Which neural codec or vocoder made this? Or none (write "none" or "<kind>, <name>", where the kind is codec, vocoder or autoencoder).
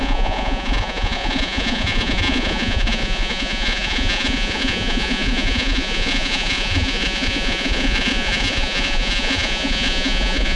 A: vocoder, Vocos